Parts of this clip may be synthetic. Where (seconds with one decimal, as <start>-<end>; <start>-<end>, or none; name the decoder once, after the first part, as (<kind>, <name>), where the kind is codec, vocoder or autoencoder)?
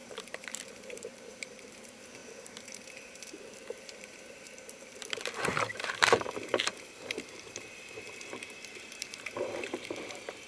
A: 0.0-2.2 (vocoder, BigVGAN v2); 2.9-10.5